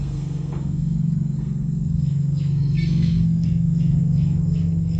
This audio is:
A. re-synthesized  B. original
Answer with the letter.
A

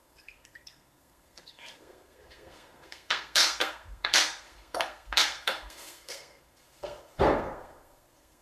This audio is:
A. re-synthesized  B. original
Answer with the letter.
A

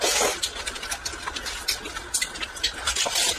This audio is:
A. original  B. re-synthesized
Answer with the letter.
A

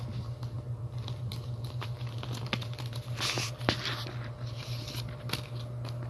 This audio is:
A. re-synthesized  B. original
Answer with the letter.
B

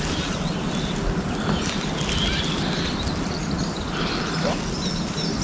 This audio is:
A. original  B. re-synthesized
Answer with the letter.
A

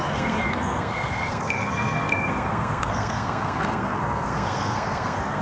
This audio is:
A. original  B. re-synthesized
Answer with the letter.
B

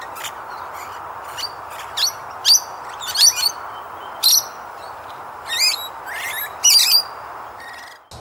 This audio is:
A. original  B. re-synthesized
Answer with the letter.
A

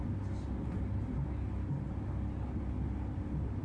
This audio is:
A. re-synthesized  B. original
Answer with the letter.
B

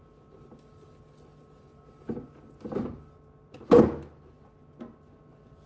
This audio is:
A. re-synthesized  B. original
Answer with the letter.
B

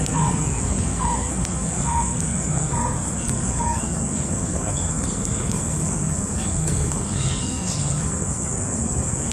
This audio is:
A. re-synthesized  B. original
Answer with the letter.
A